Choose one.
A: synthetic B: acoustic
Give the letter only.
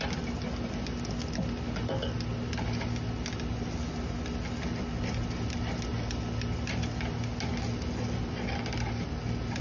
B